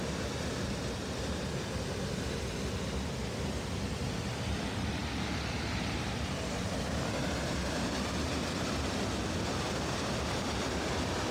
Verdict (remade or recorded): recorded